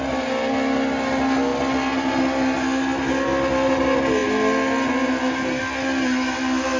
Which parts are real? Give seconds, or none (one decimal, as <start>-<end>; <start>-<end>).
0.0-6.8